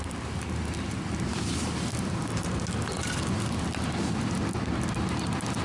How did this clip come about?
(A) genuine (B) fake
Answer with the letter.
A